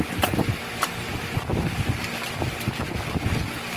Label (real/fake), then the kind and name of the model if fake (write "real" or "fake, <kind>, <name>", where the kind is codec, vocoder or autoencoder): real